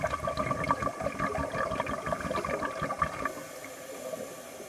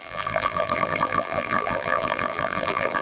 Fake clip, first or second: second